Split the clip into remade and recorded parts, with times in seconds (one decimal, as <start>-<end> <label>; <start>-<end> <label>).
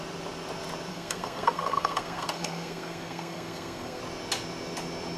0.0-0.9 recorded; 0.9-4.0 remade; 4.0-5.2 recorded